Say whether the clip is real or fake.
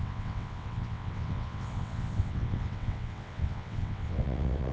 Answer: fake